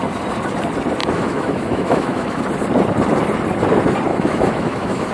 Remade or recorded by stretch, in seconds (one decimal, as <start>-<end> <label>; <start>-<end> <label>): 0.0-1.0 recorded; 1.0-2.4 remade; 2.4-4.1 recorded; 4.1-5.1 remade

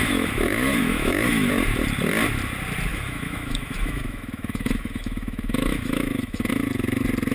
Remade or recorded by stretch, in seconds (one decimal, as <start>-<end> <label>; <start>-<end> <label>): 0.0-1.5 remade; 1.5-2.9 recorded; 2.9-6.5 remade; 6.5-7.3 recorded

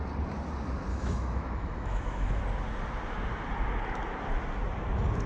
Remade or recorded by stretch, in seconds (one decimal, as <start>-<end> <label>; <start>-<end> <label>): 0.0-0.9 recorded; 0.9-2.4 remade; 2.4-5.3 recorded

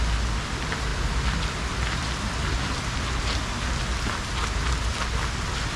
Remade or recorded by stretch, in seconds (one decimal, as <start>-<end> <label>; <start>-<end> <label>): 0.0-5.8 recorded

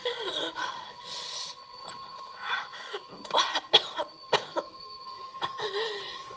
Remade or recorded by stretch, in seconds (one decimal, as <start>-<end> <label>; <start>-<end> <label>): 0.0-2.1 recorded; 2.1-3.1 remade; 3.1-4.5 recorded; 4.5-6.4 remade